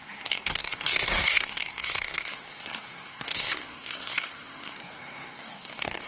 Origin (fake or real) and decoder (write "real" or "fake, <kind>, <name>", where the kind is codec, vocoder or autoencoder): fake, codec, SNAC